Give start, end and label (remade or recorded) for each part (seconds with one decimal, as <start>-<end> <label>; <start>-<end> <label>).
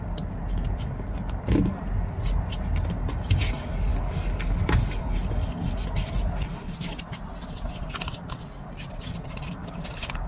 0.0-3.9 recorded; 3.9-5.0 remade; 5.0-9.6 recorded; 9.6-10.3 remade